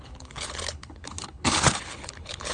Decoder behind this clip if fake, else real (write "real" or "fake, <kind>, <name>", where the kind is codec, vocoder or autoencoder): fake, codec, HILCodec